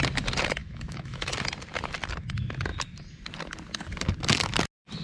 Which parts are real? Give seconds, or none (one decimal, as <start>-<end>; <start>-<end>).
0.0-0.6; 1.3-5.0